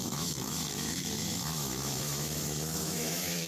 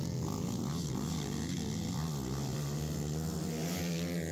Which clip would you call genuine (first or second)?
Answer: second